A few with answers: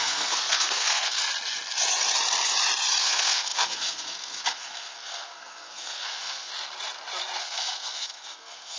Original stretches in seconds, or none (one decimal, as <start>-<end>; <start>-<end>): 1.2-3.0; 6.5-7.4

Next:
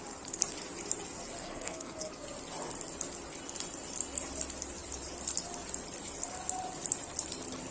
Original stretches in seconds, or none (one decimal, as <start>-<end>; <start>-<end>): 0.0-1.4; 1.9-7.7

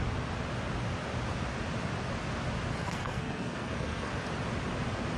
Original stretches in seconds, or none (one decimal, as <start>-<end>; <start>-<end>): 0.0-2.8; 4.1-5.2

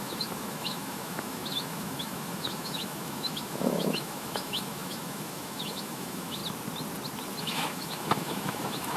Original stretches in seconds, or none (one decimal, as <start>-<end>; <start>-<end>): 6.4-7.4